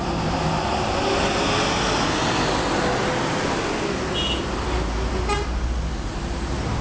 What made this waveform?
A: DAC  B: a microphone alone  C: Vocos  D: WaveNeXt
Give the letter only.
B